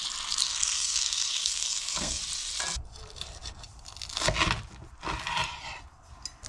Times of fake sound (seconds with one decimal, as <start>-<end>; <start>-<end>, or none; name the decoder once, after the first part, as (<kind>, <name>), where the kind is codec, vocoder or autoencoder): 0.4-2.2 (codec, SNAC)